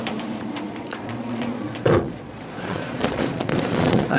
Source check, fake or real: fake